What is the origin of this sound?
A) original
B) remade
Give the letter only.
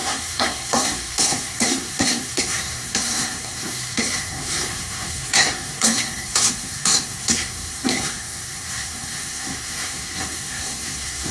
B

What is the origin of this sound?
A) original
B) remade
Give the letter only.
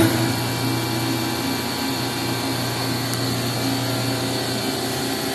A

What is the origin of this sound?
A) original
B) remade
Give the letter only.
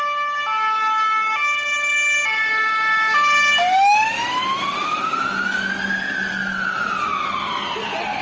A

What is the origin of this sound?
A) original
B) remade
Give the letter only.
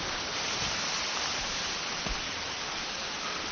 A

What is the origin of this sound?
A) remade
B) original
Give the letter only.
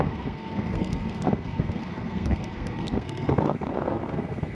A